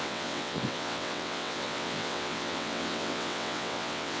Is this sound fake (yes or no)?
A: yes